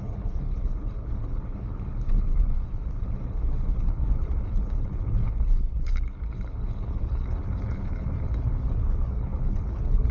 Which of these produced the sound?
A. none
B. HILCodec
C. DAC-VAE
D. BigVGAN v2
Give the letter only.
B